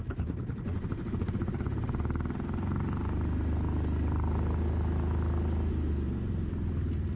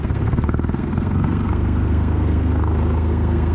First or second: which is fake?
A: second